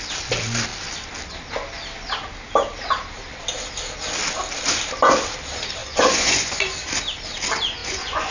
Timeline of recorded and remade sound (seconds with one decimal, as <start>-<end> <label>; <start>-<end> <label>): 0.0-5.8 recorded; 5.8-6.7 remade; 6.7-7.8 recorded; 7.8-8.3 remade